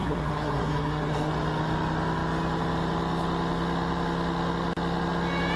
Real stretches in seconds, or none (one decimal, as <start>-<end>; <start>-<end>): 1.3-5.6